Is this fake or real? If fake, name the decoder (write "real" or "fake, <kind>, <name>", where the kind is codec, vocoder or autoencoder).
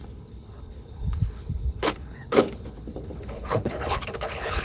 fake, codec, HILCodec